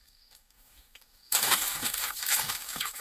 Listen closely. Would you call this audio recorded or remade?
remade